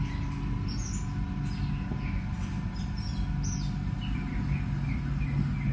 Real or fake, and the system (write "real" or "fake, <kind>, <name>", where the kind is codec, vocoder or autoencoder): real